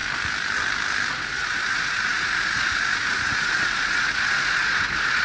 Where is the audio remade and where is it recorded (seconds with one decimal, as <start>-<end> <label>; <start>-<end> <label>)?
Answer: 0.0-1.1 recorded; 1.1-5.2 remade